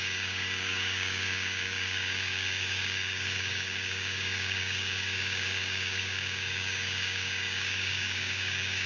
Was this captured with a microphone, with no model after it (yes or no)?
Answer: no